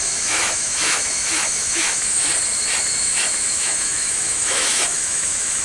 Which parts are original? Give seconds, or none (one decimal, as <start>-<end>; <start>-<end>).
2.3-2.9